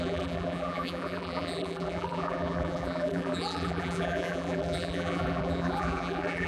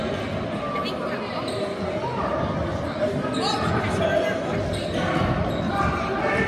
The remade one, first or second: first